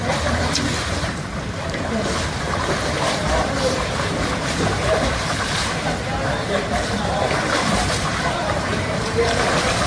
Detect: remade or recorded remade